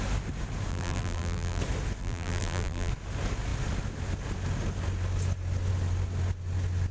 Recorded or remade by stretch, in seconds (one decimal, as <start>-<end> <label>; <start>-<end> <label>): 0.0-0.7 recorded; 0.7-1.6 remade; 1.6-2.0 recorded; 2.0-2.9 remade; 2.9-6.9 recorded

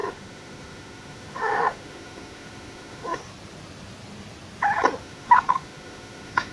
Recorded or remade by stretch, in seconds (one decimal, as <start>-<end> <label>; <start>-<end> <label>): 0.0-3.2 remade; 3.2-5.0 recorded; 5.0-6.5 remade